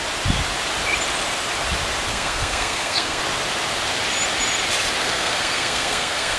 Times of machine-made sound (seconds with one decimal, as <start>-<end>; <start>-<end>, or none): 2.1-3.2; 5.0-6.4